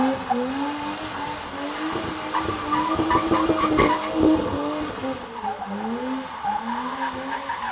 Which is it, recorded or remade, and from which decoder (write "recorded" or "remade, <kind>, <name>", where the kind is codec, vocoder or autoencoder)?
recorded